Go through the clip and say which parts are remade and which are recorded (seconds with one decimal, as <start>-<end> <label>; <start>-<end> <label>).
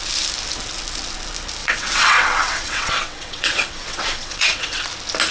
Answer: 0.0-1.6 recorded; 1.6-4.8 remade; 4.8-5.3 recorded